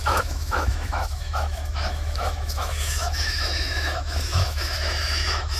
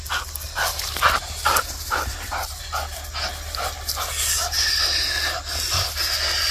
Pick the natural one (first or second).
second